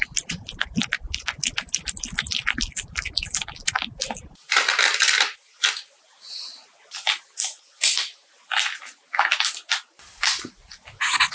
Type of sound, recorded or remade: recorded